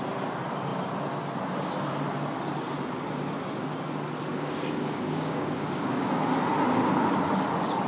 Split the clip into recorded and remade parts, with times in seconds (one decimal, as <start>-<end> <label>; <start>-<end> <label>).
0.0-4.3 recorded; 4.3-6.1 remade; 6.1-7.9 recorded